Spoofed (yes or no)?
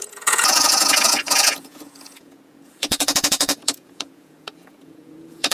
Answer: yes